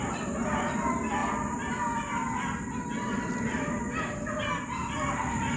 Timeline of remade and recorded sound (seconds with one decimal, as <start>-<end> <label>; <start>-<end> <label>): 0.0-5.6 recorded